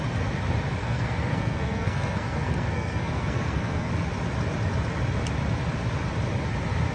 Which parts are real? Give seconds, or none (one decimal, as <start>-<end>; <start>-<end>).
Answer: 0.0-0.8; 3.9-6.9